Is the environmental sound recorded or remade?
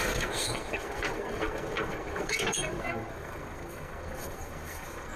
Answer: remade